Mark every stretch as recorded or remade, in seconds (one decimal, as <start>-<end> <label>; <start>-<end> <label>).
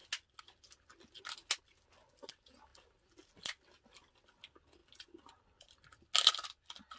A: 0.0-7.0 recorded